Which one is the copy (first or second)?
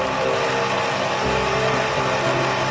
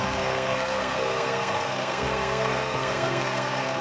second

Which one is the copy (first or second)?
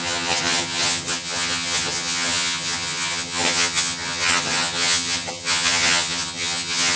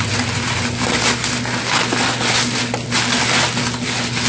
first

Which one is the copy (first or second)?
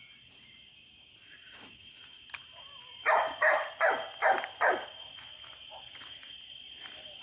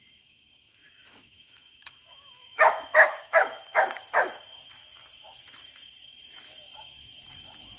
second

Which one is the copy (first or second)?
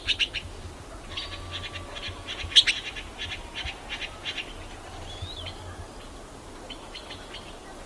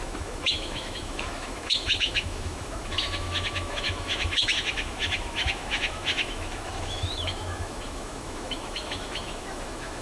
second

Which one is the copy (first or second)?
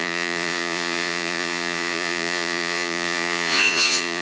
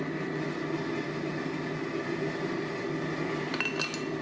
first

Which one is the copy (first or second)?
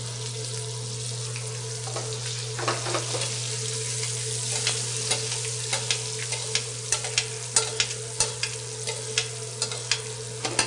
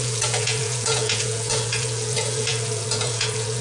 second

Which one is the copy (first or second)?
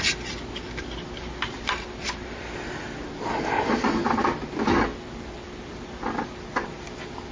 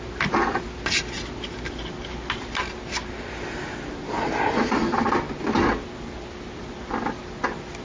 first